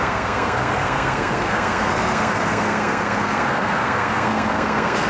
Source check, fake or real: fake